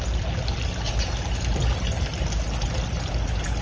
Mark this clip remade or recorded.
recorded